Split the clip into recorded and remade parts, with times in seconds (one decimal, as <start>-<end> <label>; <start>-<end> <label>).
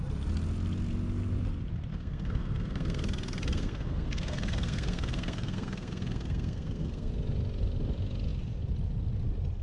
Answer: 0.0-1.9 recorded; 1.9-7.1 remade; 7.1-9.6 recorded